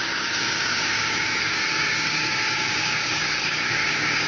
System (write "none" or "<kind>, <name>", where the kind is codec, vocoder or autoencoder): codec, DAC